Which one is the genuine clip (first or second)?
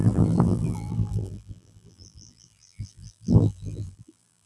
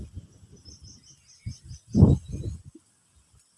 second